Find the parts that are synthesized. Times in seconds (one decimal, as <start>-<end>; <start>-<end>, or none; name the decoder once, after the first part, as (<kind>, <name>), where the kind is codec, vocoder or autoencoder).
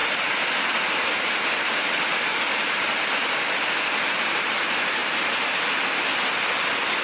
none